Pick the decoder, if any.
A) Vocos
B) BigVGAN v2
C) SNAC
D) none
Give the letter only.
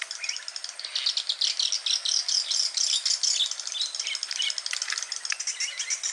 D